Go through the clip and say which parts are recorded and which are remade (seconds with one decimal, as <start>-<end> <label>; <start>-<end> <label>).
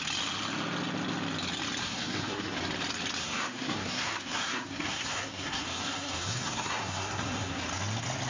0.0-1.8 recorded; 1.8-2.6 remade; 2.6-3.2 recorded; 3.2-7.6 remade; 7.6-8.3 recorded